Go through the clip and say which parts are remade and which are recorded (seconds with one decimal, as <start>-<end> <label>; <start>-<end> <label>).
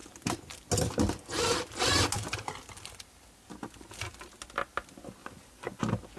0.0-5.2 recorded; 5.2-5.8 remade; 5.8-6.2 recorded